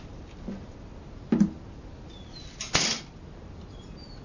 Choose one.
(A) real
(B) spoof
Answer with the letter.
A